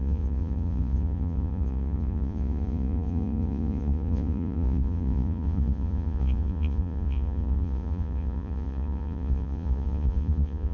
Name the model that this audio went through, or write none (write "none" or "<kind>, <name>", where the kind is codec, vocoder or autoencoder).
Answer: vocoder, Vocos